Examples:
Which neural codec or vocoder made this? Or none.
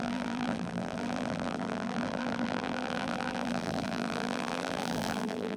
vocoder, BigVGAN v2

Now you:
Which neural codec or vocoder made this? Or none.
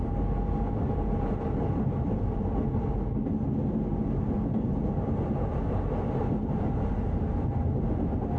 none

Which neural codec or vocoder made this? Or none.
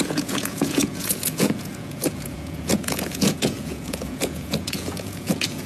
vocoder, Vocos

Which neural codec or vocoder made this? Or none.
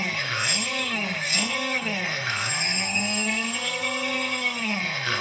codec, SNAC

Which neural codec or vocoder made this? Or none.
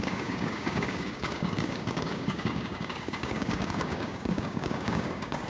codec, DAC